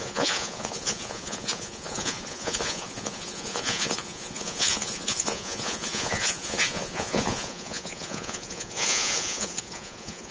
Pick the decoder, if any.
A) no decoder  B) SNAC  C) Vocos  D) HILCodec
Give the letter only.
C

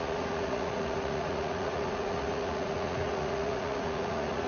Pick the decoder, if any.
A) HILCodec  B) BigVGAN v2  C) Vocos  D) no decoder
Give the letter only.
C